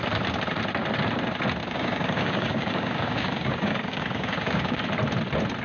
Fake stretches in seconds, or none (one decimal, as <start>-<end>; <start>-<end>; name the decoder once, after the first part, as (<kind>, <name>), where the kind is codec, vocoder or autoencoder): 1.6-4.8 (codec, DAC)